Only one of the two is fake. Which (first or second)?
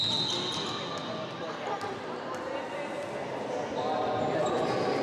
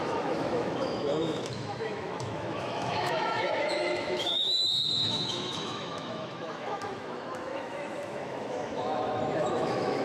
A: second